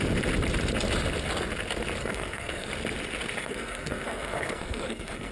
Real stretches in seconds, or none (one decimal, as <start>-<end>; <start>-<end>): 0.0-2.0; 2.7-3.4

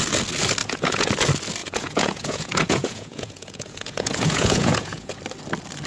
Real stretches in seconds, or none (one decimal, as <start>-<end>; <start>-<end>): 0.0-0.6; 1.1-1.6; 5.1-5.9

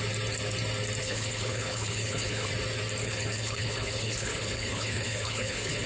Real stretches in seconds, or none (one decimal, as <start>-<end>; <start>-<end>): 0.0-1.0; 2.5-3.0

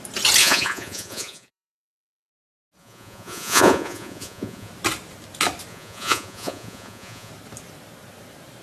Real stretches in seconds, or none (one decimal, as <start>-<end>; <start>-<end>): 0.0-0.4; 2.3-2.8; 4.7-5.7; 7.3-8.6